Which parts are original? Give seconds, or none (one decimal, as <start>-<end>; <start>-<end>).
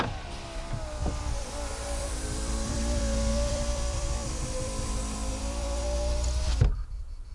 0.0-1.0; 5.4-7.3